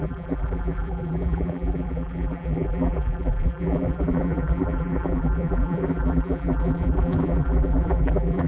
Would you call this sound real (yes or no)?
no